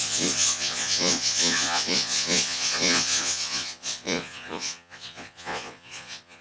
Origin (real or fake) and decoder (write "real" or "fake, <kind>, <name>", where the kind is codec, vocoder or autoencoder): fake, vocoder, Vocos